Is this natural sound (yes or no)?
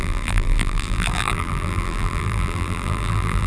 no